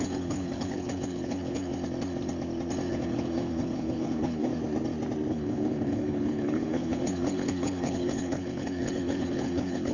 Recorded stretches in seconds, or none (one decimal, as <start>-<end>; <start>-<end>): 1.7-2.9; 4.5-5.3